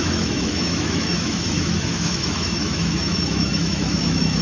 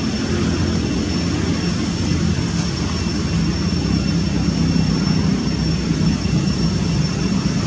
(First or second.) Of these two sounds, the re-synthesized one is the first